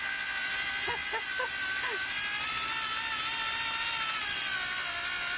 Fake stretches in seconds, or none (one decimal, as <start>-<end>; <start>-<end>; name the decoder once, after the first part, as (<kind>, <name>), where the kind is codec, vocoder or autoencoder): none